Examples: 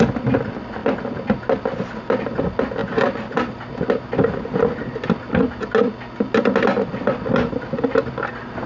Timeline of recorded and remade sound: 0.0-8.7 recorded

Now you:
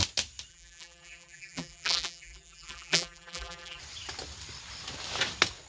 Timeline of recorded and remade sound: 0.0-0.5 recorded; 0.5-3.8 remade; 3.8-5.7 recorded

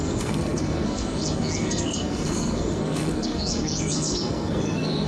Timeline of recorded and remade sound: 0.0-5.1 remade